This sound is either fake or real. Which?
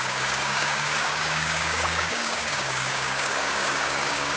fake